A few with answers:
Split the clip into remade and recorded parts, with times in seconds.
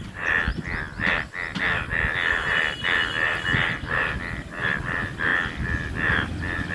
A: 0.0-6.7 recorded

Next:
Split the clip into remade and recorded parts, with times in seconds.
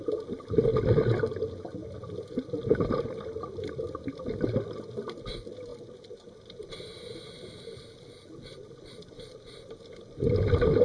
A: 0.0-10.8 recorded